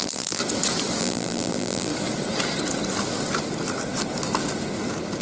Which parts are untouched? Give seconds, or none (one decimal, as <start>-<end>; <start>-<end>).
0.4-1.0; 1.9-5.2